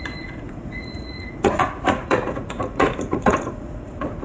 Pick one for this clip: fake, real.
fake